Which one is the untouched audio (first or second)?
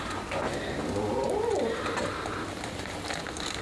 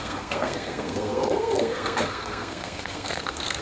first